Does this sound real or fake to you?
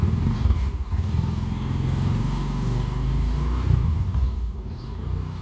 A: fake